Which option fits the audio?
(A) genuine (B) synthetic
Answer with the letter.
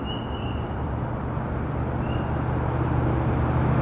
A